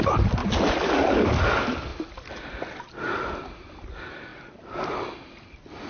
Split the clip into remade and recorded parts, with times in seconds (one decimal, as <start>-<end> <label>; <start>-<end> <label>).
0.0-5.9 recorded

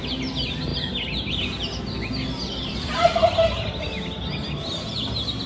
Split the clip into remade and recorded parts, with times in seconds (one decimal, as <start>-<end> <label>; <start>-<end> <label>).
0.0-5.5 recorded